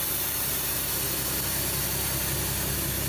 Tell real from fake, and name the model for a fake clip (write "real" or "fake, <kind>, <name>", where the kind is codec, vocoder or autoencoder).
real